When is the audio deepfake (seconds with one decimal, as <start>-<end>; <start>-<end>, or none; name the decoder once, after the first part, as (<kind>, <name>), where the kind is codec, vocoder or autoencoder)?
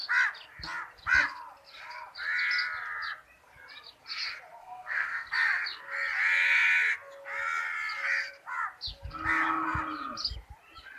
4.6-5.3 (codec, SNAC)